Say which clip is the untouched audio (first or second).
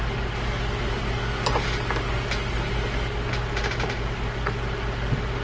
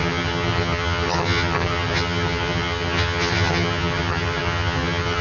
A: first